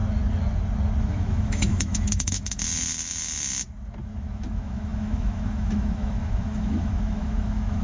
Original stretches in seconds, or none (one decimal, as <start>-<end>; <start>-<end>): 0.0-1.0; 2.6-4.0